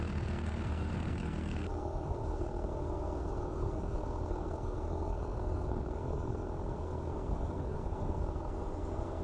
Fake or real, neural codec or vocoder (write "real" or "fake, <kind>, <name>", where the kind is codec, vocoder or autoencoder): fake, codec, SNAC